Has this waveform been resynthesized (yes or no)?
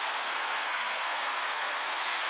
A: yes